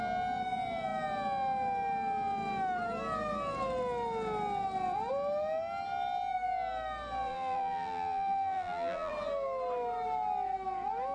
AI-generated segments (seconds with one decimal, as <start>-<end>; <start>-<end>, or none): 7.3-9.1